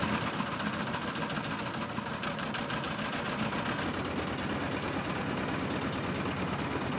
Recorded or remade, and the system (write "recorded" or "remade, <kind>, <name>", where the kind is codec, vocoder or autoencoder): recorded